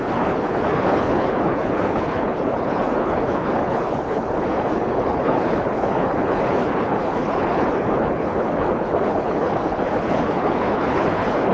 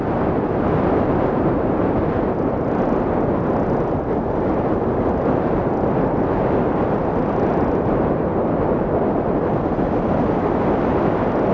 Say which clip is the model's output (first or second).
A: first